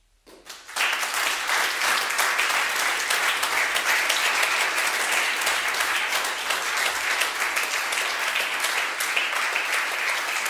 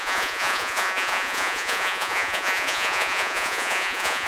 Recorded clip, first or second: first